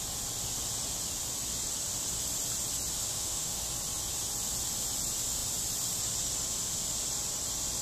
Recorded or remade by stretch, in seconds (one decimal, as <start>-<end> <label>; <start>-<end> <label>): 0.0-3.1 recorded; 3.1-3.6 remade; 3.6-7.8 recorded

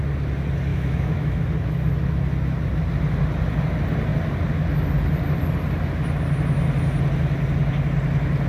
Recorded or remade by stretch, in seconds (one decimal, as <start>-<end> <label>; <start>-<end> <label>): 0.0-0.7 recorded; 0.7-1.4 remade; 1.4-8.5 recorded

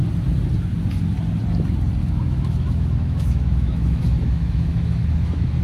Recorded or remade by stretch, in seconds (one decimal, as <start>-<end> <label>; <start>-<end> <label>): 0.0-2.0 recorded; 2.0-5.6 remade

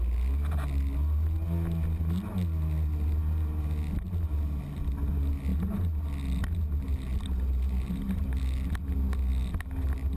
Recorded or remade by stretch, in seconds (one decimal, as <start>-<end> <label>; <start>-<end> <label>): 0.0-10.2 recorded

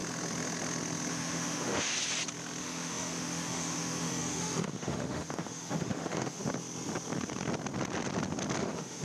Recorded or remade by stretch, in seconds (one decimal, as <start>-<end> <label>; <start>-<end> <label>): 0.0-1.1 recorded; 1.1-1.9 remade; 1.9-2.6 recorded; 2.6-6.4 remade; 6.4-8.6 recorded; 8.6-9.0 remade

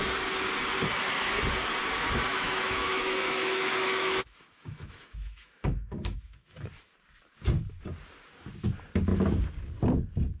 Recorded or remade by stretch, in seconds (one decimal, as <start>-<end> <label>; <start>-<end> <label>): 0.0-2.3 recorded; 2.3-6.6 remade; 6.6-10.4 recorded

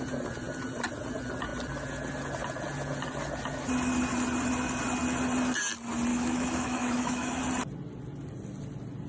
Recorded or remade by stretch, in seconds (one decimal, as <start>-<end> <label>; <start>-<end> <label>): 0.0-6.1 recorded; 6.1-7.4 remade; 7.4-9.1 recorded